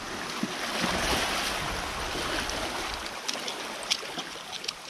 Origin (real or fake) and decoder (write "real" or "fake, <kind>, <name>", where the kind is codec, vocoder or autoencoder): real